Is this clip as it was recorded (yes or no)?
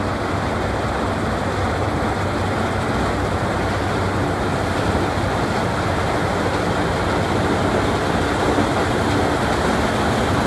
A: yes